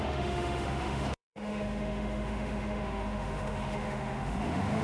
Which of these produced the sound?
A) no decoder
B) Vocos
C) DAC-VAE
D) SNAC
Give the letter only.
C